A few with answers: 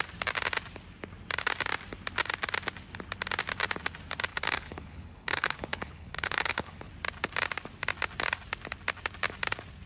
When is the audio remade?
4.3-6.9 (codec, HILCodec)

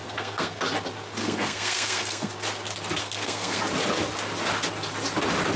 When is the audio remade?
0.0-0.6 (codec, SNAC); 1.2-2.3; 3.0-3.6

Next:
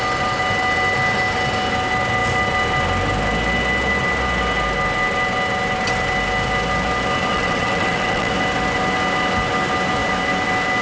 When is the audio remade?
7.3-8.3 (vocoder, WaveNeXt)